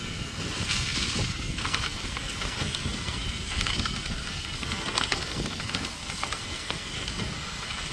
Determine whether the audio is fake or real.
fake